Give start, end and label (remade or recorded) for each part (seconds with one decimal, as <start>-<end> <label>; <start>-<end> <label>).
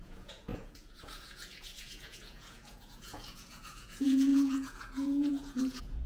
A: 0.0-6.1 remade